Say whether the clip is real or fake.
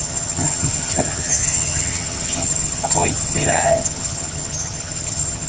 fake